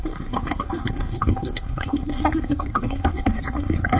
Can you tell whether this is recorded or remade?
remade